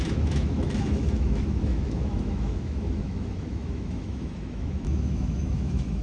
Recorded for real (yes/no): no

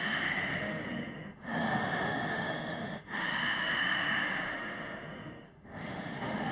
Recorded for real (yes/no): no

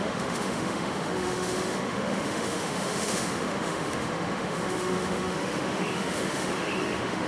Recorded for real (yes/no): no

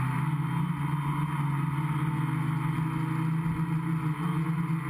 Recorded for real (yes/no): yes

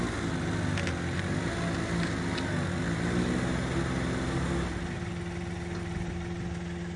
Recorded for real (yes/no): yes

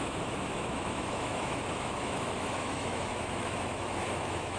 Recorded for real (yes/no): no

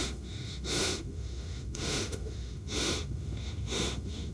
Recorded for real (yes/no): no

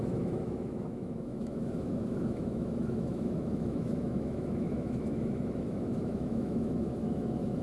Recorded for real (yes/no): no